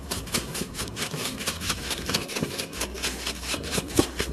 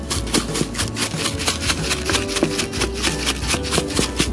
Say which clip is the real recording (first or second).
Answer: second